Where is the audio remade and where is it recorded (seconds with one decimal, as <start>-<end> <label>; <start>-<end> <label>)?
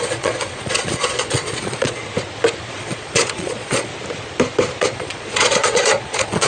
0.0-2.0 remade; 2.0-2.8 recorded; 2.8-3.9 remade; 3.9-4.8 recorded; 4.8-6.5 remade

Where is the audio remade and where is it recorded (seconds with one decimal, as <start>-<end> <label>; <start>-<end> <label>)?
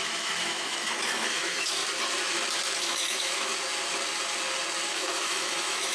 0.0-1.8 remade; 1.8-2.8 recorded; 2.8-3.5 remade; 3.5-4.9 recorded; 4.9-5.9 remade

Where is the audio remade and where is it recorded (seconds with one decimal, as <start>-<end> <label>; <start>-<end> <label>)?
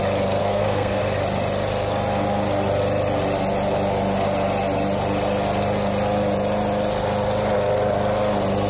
0.0-0.4 recorded; 0.4-1.0 remade; 1.0-8.7 recorded